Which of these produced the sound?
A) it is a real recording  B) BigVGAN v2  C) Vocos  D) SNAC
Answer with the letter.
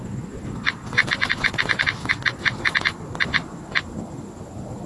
A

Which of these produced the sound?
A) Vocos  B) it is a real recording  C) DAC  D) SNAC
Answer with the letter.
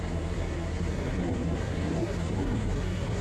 D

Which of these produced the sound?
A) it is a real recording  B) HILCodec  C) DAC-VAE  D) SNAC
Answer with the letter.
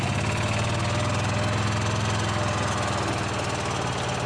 A